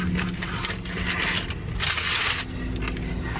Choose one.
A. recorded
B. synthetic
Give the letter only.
A